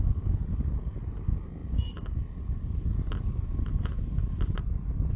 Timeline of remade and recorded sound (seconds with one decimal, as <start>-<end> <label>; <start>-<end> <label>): 0.0-5.2 recorded